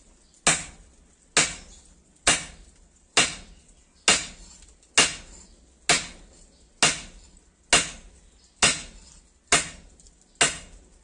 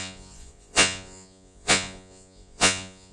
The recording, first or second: first